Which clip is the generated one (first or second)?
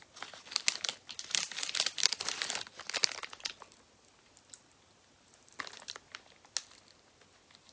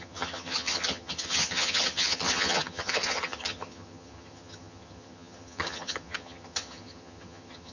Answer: second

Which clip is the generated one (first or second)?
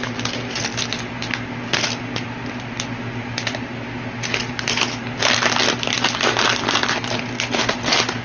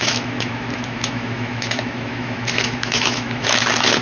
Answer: second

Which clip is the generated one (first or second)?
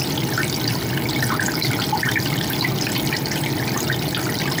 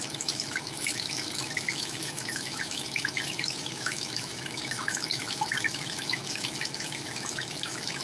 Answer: second